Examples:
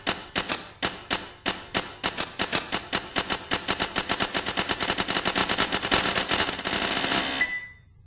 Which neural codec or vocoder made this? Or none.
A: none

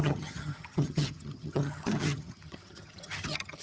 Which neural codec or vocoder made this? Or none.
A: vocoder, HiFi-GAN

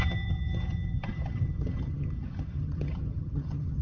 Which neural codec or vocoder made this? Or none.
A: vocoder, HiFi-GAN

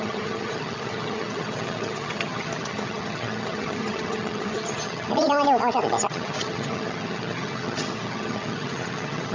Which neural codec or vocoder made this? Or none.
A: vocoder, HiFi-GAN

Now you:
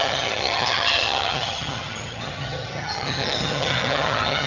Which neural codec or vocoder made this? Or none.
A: vocoder, HiFi-GAN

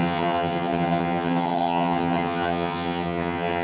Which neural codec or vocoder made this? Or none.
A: vocoder, HiFi-GAN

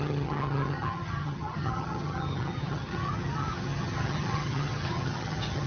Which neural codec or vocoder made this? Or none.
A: vocoder, HiFi-GAN